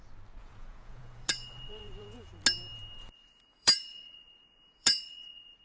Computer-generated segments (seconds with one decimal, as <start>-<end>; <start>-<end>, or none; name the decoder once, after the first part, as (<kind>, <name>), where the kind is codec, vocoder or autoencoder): 0.4-2.3 (vocoder, Vocos); 3.0-5.6